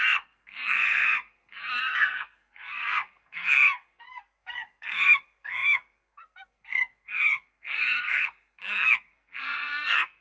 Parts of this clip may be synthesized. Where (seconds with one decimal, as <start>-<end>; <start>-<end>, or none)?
0.0-10.2